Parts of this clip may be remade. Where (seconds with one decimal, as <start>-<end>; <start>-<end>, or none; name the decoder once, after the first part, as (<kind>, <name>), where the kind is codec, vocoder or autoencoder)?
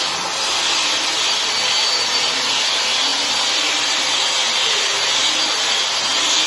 none